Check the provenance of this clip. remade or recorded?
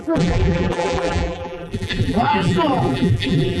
remade